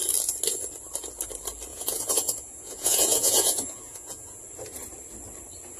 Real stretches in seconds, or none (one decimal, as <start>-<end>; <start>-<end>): 0.0-1.7; 4.4-5.8